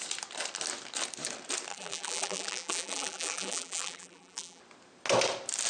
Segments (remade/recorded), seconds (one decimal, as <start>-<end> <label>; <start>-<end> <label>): 0.0-1.7 recorded; 1.7-4.6 remade; 4.6-5.7 recorded